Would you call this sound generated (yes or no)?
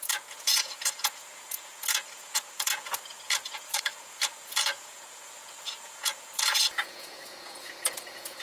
yes